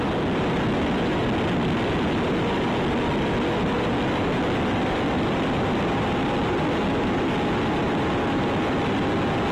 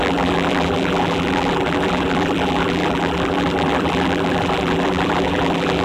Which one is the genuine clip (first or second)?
first